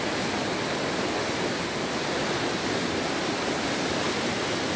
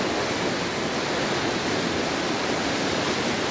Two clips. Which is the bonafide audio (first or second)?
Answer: second